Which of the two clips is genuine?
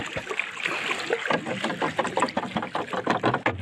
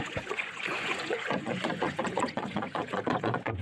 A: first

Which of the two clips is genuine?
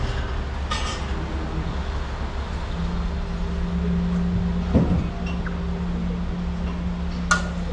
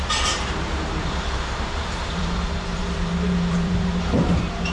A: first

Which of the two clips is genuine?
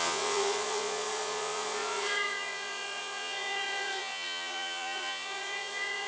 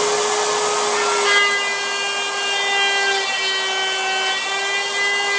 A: second